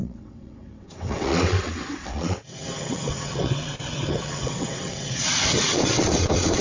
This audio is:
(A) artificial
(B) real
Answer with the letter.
A